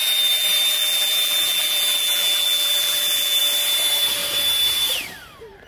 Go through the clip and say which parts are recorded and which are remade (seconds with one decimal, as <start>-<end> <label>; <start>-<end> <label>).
0.0-3.4 remade; 3.4-5.7 recorded